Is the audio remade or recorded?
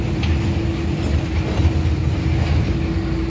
recorded